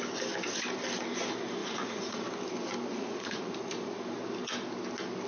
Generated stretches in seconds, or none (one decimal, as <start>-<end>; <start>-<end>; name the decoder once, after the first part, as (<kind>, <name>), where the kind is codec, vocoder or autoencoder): 1.6-2.2 (vocoder, Vocos); 2.9-3.5